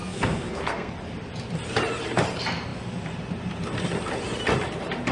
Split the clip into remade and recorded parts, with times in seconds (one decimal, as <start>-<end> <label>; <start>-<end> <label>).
0.0-0.9 remade; 0.9-5.1 recorded